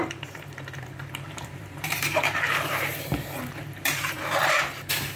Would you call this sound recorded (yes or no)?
no